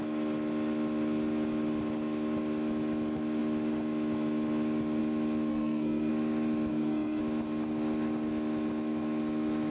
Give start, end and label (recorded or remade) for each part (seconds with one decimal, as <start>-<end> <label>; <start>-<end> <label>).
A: 0.0-5.5 recorded; 5.5-6.1 remade; 6.1-6.7 recorded; 6.7-7.2 remade; 7.2-9.7 recorded